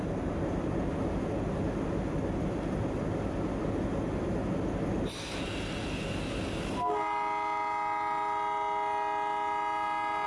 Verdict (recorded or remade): recorded